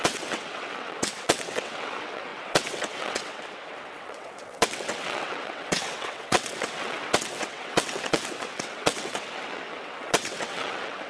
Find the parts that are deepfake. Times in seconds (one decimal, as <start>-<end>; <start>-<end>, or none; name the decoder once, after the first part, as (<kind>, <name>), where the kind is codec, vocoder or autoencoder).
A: 0.0-11.1 (vocoder, WaveNeXt)